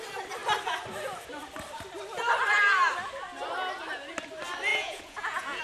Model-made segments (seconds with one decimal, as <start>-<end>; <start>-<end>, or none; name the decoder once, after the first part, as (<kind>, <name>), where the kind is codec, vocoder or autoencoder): 4.7-5.6 (vocoder, Vocos)